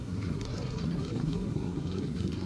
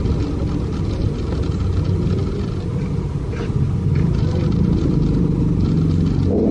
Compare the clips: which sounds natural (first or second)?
second